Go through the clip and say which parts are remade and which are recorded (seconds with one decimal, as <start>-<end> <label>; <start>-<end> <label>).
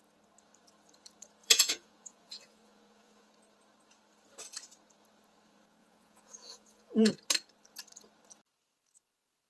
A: 0.0-1.4 recorded; 1.4-3.3 remade; 3.3-5.8 recorded; 5.8-7.1 remade; 7.1-9.5 recorded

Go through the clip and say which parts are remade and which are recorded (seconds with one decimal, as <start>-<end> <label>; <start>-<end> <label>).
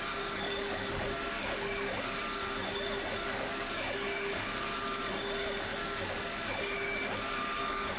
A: 0.0-8.0 remade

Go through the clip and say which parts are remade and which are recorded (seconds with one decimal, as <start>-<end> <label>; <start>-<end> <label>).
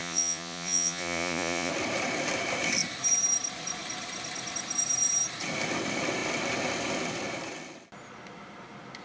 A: 0.0-1.7 remade; 1.7-9.0 recorded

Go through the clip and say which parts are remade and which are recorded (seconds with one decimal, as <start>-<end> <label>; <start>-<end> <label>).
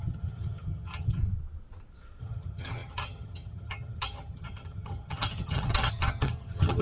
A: 0.0-1.2 remade; 1.2-2.2 recorded; 2.2-6.8 remade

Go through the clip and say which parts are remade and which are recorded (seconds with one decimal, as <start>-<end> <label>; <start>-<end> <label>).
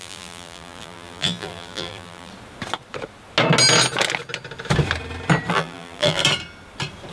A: 0.0-2.3 remade; 2.3-5.5 recorded; 5.5-6.2 remade; 6.2-7.1 recorded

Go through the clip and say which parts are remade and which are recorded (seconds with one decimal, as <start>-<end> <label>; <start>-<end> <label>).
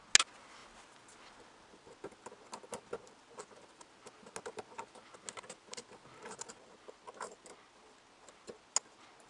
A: 0.0-9.3 recorded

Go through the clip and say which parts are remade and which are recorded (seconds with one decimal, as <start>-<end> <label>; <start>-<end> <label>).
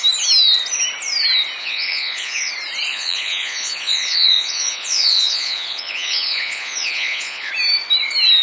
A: 0.0-1.6 recorded; 1.6-2.5 remade; 2.5-2.9 recorded; 2.9-7.5 remade; 7.5-8.4 recorded